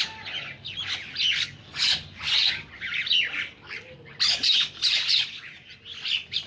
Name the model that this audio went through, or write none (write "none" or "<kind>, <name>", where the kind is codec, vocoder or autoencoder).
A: none